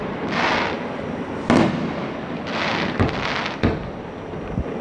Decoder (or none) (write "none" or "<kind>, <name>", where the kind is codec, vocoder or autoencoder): none